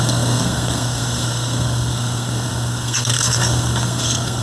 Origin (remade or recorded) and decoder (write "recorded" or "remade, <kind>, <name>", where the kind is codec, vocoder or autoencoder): remade, codec, SNAC